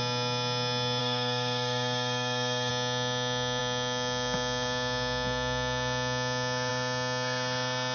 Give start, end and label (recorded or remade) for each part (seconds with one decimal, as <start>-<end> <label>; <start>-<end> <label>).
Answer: 0.0-1.0 recorded; 1.0-2.7 remade; 2.7-7.9 recorded